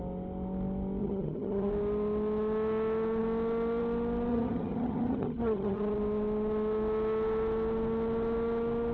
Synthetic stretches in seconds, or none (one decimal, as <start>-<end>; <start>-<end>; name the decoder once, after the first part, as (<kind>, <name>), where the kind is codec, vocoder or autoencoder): 1.0-1.7 (vocoder, HiFi-GAN); 4.3-5.8